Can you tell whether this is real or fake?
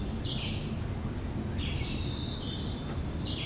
real